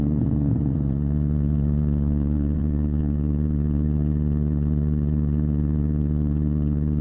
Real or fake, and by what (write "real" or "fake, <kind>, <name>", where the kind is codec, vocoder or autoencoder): fake, vocoder, Vocos